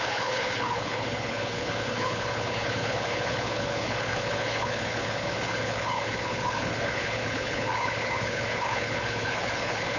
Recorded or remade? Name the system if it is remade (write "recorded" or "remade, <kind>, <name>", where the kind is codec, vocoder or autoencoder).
remade, codec, HILCodec